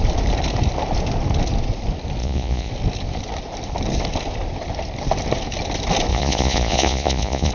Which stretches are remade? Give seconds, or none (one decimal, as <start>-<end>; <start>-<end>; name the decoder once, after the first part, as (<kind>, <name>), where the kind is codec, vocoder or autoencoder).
2.2-2.7 (vocoder, Vocos); 6.1-7.5